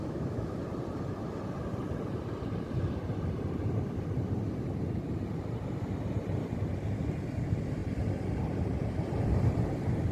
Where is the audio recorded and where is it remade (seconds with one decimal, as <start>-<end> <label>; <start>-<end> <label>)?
0.0-0.6 remade; 0.6-10.1 recorded